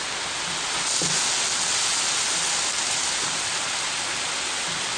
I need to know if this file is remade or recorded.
recorded